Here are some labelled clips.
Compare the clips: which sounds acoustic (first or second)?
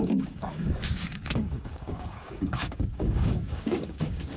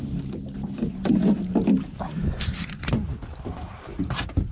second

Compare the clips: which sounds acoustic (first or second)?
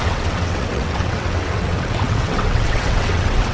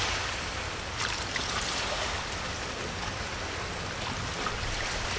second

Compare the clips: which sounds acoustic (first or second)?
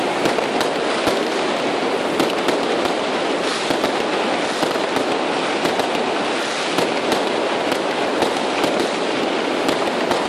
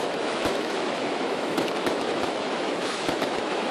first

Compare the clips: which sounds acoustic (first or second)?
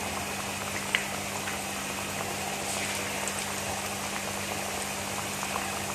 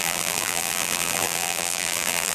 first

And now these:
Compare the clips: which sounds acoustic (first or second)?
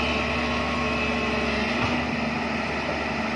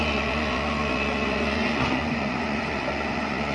first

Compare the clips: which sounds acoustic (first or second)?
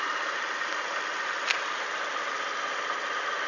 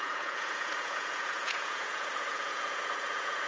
first